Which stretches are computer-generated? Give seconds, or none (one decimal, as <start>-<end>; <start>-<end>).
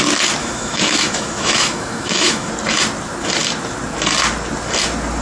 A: 0.4-2.5